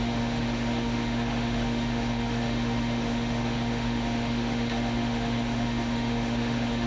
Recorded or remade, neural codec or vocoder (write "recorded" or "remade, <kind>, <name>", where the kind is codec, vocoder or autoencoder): remade, autoencoder, DAC-VAE